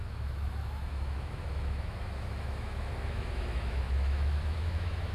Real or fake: fake